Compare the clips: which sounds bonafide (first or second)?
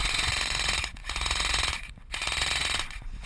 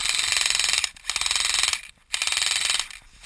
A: second